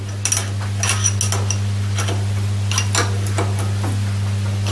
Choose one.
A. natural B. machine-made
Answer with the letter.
A